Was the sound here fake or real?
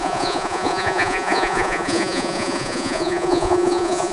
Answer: fake